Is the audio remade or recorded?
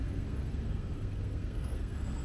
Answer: remade